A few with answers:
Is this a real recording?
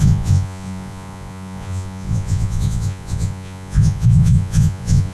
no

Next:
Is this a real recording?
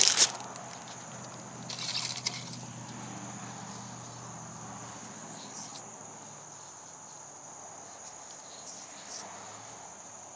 yes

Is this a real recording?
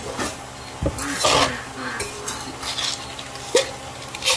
yes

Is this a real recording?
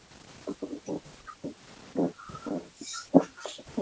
yes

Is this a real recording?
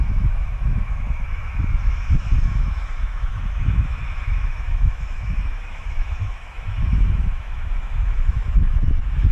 no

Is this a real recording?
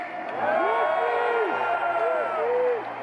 yes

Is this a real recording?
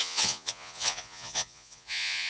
no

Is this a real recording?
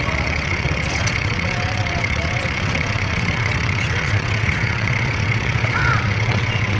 no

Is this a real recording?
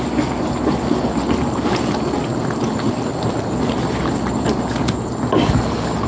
yes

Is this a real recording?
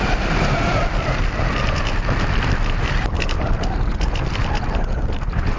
yes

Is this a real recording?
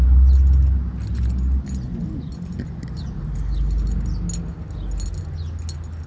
yes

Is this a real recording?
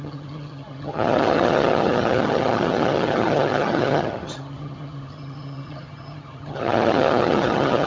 no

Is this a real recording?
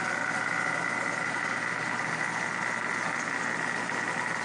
yes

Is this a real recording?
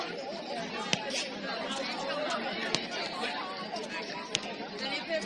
yes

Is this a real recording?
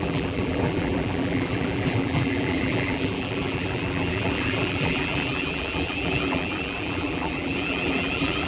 no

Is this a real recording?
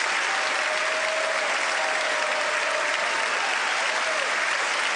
yes